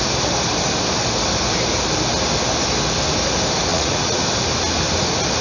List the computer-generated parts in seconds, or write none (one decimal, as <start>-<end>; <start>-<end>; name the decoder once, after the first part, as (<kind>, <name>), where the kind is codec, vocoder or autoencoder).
3.7-4.2 (vocoder, Vocos)